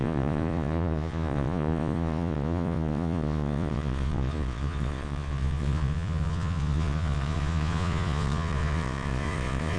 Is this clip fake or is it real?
fake